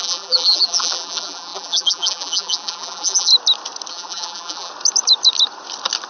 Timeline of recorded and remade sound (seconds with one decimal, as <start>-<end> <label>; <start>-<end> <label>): 0.0-3.3 remade; 3.3-3.9 recorded; 3.9-4.7 remade; 4.7-6.1 recorded